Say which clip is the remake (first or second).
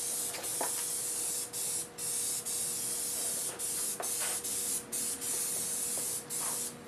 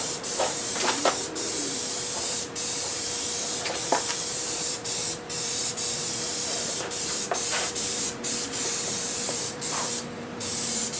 second